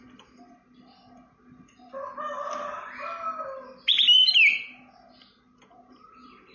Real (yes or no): yes